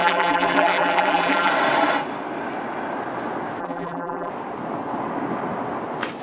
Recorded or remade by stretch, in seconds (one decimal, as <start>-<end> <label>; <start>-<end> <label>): 0.0-1.5 remade; 1.5-3.6 recorded; 3.6-4.3 remade; 4.3-6.2 recorded